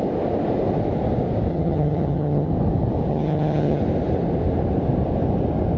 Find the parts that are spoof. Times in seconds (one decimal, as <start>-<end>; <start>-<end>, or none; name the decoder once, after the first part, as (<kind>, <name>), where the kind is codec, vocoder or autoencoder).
1.5-2.5 (vocoder, HiFi-GAN); 3.1-3.8